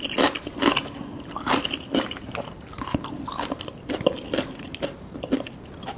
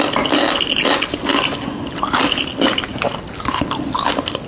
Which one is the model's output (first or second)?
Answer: first